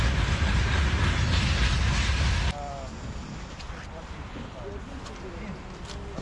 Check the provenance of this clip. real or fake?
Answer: real